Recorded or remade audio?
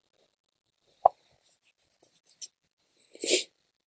recorded